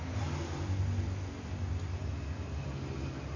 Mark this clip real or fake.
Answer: real